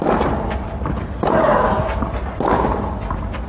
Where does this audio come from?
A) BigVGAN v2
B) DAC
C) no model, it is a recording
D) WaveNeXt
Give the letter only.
C